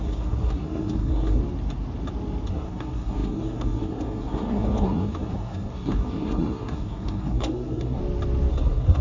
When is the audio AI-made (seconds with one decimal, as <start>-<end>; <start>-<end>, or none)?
0.0-1.4; 2.5-8.0; 8.5-9.0